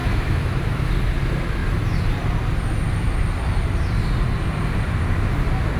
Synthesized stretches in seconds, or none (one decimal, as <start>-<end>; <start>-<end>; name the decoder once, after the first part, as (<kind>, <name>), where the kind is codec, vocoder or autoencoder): 0.0-0.9 (autoencoder, DAC-VAE)